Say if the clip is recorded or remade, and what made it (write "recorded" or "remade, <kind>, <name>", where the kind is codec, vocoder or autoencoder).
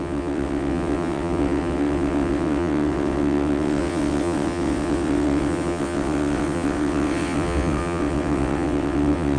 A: remade, vocoder, WaveNeXt